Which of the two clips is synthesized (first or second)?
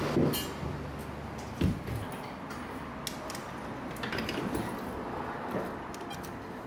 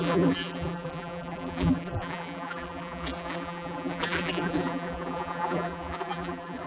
second